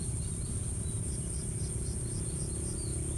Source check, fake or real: real